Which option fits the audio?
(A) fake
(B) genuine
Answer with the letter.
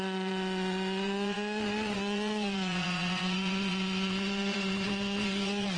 A